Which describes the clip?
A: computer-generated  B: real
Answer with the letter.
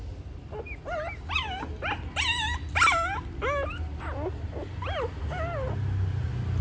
B